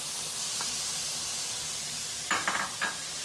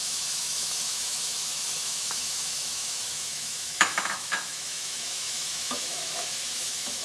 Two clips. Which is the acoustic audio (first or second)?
first